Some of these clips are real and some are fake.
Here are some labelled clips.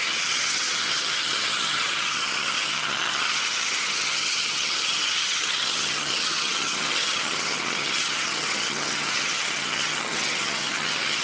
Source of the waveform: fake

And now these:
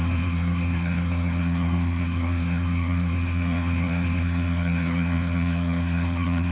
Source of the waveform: fake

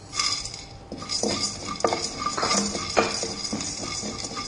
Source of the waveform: real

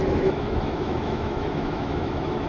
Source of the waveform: fake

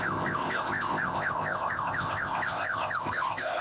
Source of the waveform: fake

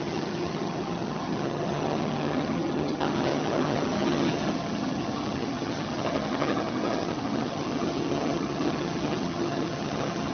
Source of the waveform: fake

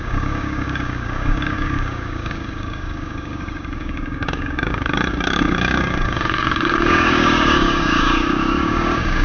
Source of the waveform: fake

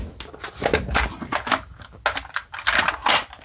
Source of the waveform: real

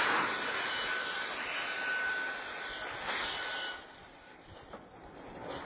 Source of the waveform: real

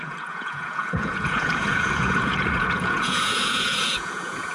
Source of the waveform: fake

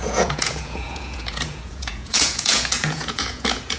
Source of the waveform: fake